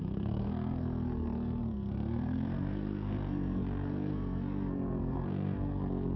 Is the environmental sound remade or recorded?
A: remade